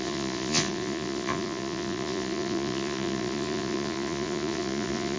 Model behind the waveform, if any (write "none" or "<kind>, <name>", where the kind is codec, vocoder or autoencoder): vocoder, Vocos